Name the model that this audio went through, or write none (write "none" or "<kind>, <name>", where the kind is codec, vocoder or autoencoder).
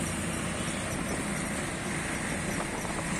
none